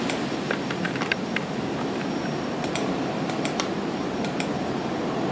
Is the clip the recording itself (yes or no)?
no